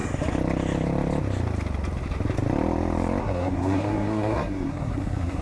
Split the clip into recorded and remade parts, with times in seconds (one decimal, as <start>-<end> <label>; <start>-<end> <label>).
0.0-3.2 recorded; 3.2-5.4 remade